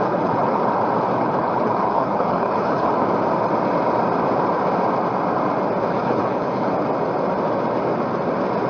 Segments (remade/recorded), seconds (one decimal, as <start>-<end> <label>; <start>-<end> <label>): 0.0-0.6 remade; 0.6-1.2 recorded; 1.2-2.9 remade; 2.9-5.9 recorded; 5.9-6.7 remade; 6.7-8.7 recorded

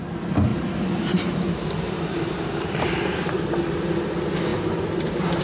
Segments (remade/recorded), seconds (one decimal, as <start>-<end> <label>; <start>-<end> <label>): 0.0-0.5 recorded; 0.5-3.5 remade; 3.5-4.5 recorded; 4.5-5.4 remade

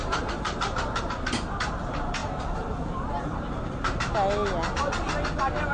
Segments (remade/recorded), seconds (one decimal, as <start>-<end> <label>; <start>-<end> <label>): 0.0-1.0 remade; 1.0-2.2 recorded; 2.2-4.0 remade; 4.0-5.7 recorded

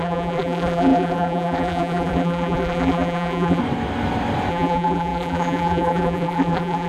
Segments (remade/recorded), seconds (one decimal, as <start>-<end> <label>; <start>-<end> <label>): 0.0-3.6 remade; 3.6-4.5 recorded; 4.5-6.9 remade

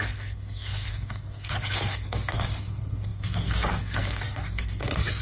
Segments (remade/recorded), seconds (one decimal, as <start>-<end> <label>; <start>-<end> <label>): 0.0-5.2 remade

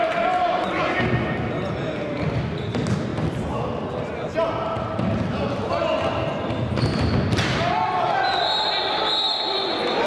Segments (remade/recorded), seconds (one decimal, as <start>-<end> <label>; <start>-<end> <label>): 0.0-10.1 recorded

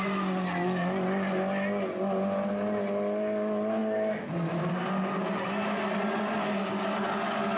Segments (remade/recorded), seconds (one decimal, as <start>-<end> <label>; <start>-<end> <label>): 0.0-7.6 recorded

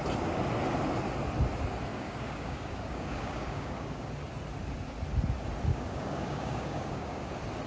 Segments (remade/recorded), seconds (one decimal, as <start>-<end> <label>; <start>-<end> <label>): 0.0-1.9 recorded; 1.9-4.1 remade; 4.1-5.7 recorded; 5.7-7.3 remade; 7.3-7.7 recorded